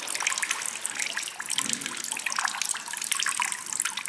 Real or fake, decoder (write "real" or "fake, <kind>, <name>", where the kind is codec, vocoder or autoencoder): real